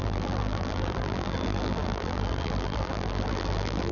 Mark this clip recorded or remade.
remade